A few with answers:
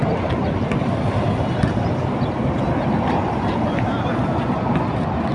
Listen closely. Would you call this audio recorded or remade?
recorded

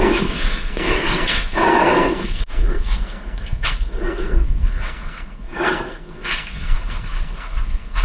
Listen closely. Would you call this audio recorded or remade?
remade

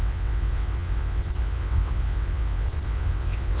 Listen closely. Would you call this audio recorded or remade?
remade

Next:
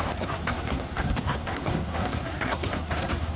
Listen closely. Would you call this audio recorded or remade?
remade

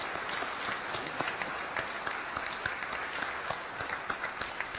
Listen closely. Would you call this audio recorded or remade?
recorded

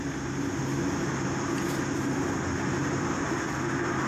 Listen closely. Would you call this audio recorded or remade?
recorded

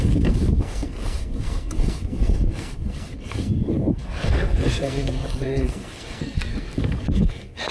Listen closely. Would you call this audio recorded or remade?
remade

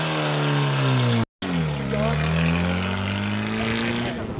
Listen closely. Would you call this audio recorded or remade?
recorded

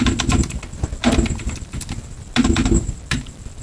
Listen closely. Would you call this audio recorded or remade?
recorded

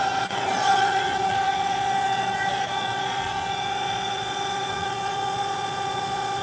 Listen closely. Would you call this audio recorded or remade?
remade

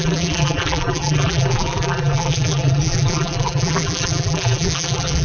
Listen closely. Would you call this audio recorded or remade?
remade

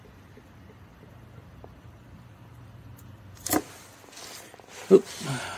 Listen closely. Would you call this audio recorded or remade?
recorded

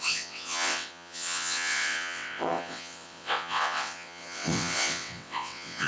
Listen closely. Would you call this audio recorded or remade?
remade